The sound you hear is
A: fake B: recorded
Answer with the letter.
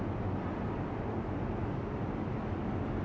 B